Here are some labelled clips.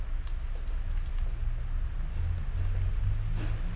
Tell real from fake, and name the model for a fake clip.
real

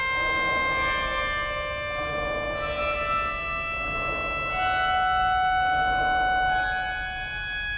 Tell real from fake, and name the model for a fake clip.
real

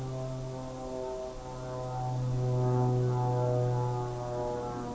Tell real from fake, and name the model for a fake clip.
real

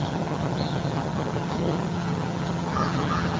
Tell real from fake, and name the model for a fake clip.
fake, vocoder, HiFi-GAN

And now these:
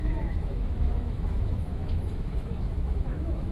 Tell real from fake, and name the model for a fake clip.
fake, autoencoder, DAC-VAE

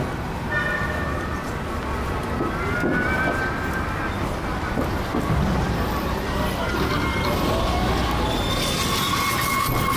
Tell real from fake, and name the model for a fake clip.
real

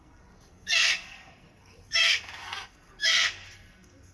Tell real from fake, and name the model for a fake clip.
fake, codec, SNAC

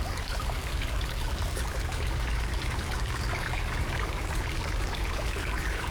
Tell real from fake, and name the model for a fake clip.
fake, codec, DAC